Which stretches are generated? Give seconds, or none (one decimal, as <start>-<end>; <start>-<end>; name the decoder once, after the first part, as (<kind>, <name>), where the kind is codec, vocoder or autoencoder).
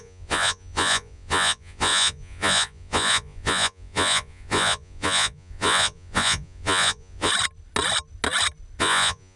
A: 0.0-7.3 (vocoder, Vocos); 8.8-9.4